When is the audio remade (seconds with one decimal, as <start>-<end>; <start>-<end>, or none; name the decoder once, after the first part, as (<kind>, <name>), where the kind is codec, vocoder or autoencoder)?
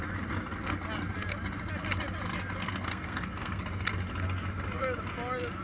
2.6-3.6 (codec, SNAC)